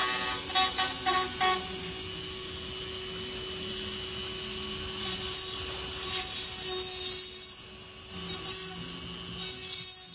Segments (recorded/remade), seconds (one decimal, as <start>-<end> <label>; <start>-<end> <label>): 0.0-10.1 recorded